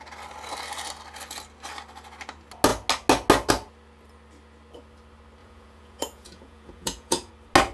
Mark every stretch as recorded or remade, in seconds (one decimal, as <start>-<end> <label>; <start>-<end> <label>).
0.0-5.4 recorded; 5.4-7.3 remade; 7.3-7.7 recorded